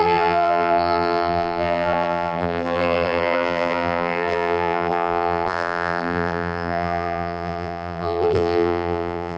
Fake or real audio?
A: fake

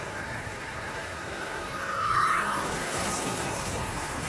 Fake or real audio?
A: fake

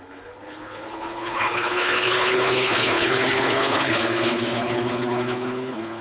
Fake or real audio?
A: fake